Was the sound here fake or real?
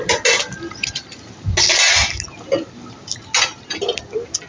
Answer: real